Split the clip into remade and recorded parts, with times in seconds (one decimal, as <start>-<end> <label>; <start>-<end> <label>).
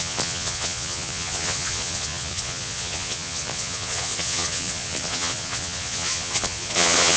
0.0-7.2 remade